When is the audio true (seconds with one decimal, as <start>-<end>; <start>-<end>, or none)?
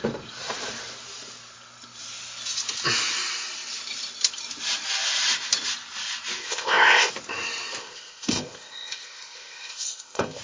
0.0-6.4; 7.1-7.8